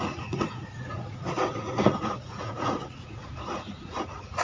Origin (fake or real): fake